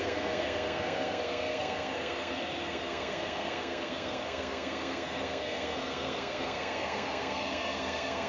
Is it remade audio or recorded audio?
remade